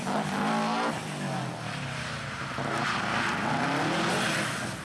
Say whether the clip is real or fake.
real